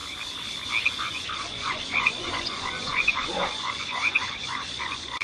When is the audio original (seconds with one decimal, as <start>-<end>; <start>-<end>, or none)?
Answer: 0.0-0.9